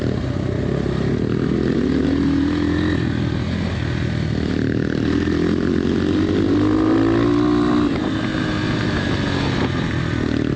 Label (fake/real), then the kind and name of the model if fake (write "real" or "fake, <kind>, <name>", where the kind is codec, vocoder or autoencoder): real